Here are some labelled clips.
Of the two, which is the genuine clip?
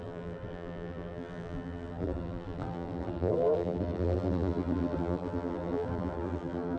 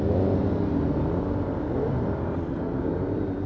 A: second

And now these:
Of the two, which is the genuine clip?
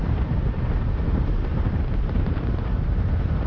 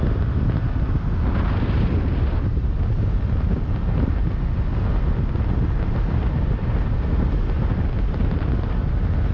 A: second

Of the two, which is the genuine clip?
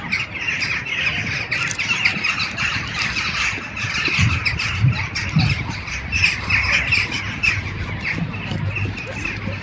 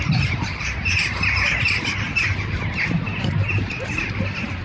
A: first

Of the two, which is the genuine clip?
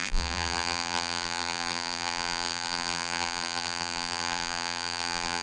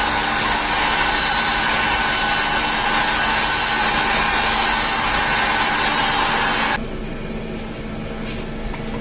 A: second